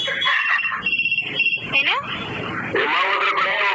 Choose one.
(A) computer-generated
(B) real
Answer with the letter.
B